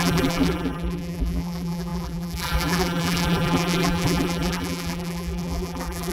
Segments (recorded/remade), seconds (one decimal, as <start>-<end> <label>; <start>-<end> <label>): 0.0-6.1 remade